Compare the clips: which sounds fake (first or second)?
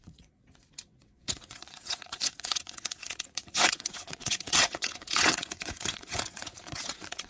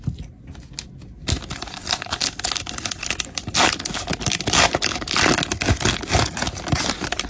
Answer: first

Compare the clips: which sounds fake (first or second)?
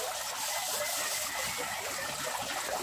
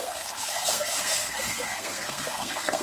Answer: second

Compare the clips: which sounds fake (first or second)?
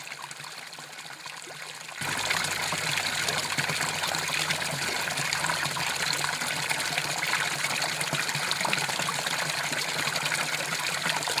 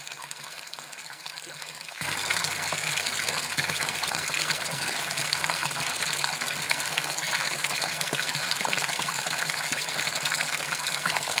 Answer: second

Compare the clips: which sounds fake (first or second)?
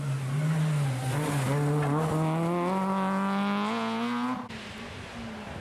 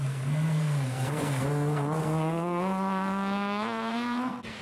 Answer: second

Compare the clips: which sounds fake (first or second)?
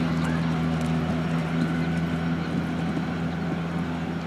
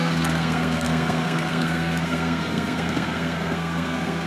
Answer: second